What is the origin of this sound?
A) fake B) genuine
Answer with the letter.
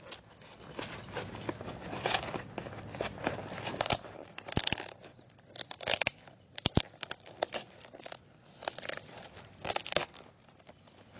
B